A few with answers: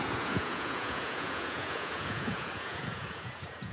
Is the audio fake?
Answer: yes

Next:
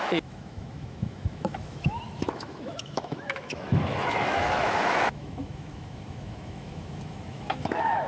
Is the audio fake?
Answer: yes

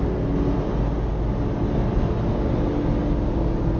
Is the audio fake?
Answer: no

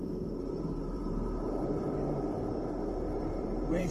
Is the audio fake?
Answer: yes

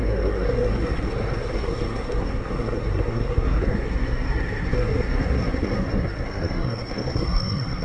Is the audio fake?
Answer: yes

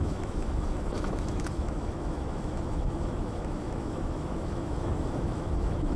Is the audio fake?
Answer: yes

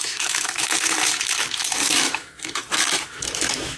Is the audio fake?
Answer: yes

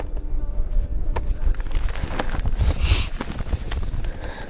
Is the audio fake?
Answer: no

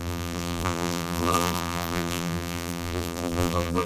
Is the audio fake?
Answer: yes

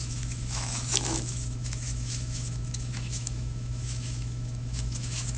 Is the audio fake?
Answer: yes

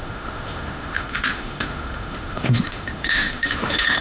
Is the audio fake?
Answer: yes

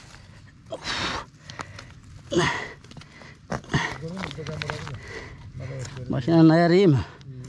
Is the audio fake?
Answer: no